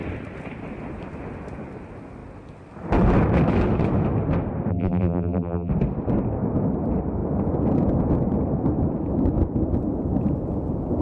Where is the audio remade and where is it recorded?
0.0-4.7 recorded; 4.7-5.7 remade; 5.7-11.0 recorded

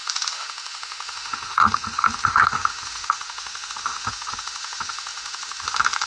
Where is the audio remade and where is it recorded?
0.0-6.1 remade

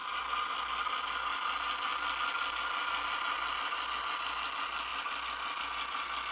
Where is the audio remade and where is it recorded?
0.0-6.3 recorded